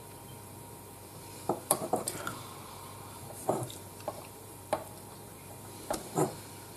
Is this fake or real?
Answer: fake